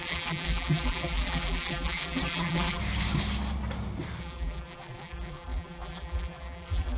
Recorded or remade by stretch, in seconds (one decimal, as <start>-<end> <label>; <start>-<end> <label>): 0.0-2.8 remade; 2.8-4.2 recorded; 4.2-7.0 remade